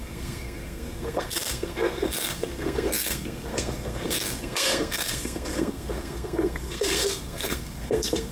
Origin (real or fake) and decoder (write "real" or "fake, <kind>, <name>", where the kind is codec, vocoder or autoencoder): fake, codec, SNAC